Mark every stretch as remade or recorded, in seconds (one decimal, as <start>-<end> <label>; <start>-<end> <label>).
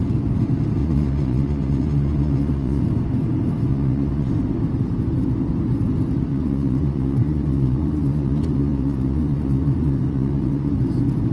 0.0-0.8 recorded; 0.8-2.8 remade; 2.8-3.7 recorded; 3.7-4.3 remade; 4.3-6.3 recorded; 6.3-10.7 remade; 10.7-11.3 recorded